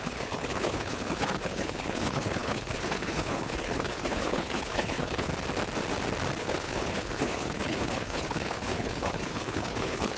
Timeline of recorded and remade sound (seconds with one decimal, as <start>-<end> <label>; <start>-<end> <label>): 0.0-5.3 remade; 5.3-6.4 recorded; 6.4-10.2 remade